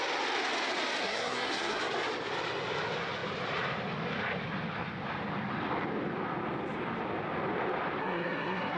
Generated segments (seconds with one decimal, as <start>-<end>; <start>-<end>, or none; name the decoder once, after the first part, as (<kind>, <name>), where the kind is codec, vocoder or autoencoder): 1.0-1.8 (codec, SNAC); 8.0-8.8